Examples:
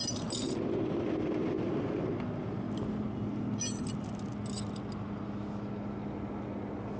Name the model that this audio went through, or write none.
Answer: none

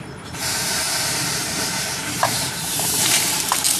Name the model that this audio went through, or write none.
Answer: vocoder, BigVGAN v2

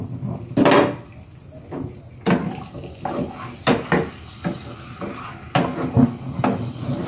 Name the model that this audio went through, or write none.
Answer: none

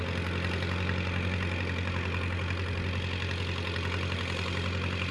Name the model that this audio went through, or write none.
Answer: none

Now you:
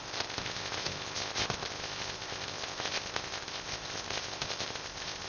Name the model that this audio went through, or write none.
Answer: codec, ZipCodec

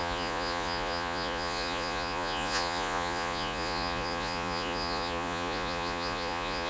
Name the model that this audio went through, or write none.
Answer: vocoder, Vocos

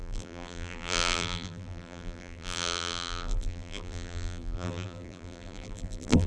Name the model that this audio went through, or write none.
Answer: vocoder, BigVGAN v2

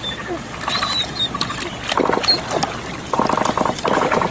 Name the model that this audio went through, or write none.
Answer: none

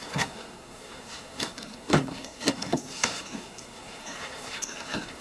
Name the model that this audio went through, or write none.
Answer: codec, SNAC